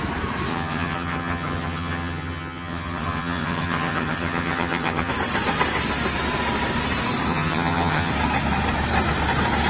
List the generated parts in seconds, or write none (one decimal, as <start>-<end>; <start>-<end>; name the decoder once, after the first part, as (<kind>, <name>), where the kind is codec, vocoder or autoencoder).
0.5-5.1 (vocoder, HiFi-GAN); 7.3-8.1